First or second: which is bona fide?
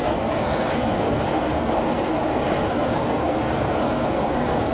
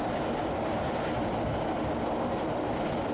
second